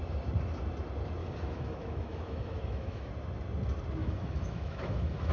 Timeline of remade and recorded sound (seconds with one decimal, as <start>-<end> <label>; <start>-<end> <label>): 0.0-1.2 recorded; 1.2-3.1 remade; 3.1-4.0 recorded; 4.0-5.3 remade

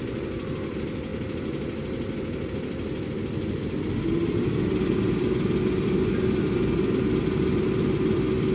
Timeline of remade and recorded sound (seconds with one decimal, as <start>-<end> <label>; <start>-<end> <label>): 0.0-8.5 recorded

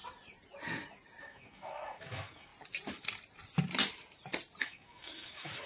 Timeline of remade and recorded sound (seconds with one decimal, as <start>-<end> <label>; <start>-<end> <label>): 0.0-1.2 recorded; 1.2-2.5 remade; 2.5-4.6 recorded; 4.6-5.7 remade

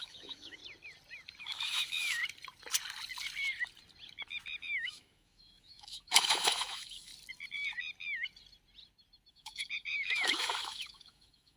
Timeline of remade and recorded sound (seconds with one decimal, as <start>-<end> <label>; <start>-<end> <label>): 0.0-0.6 remade; 0.6-1.4 recorded; 1.4-2.2 remade; 2.2-4.6 recorded; 4.6-7.1 remade; 7.1-9.3 recorded; 9.3-11.6 remade

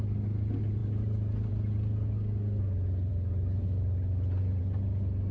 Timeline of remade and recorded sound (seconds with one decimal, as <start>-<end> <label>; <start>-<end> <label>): 0.0-5.3 recorded